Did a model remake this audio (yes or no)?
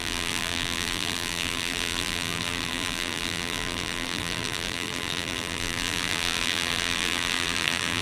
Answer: yes